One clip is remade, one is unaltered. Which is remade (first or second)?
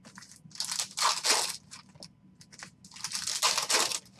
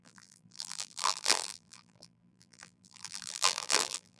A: second